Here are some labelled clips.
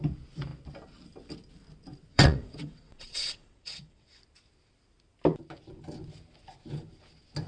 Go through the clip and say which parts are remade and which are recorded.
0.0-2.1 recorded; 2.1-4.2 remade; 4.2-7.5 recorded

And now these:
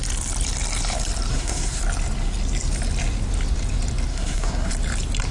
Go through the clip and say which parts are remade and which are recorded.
0.0-1.3 recorded; 1.3-1.8 remade; 1.8-4.1 recorded; 4.1-4.7 remade; 4.7-5.3 recorded

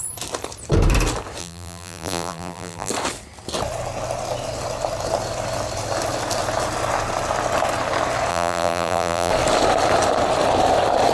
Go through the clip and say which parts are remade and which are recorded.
0.0-1.4 recorded; 1.4-2.9 remade; 2.9-8.3 recorded; 8.3-9.3 remade; 9.3-11.1 recorded